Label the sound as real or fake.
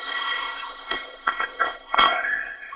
fake